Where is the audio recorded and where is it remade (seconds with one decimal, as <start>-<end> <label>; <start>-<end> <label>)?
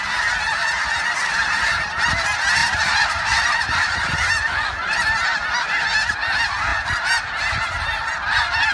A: 0.0-1.2 recorded; 1.2-2.1 remade; 2.1-2.6 recorded; 2.6-4.4 remade; 4.4-6.7 recorded; 6.7-7.2 remade; 7.2-8.7 recorded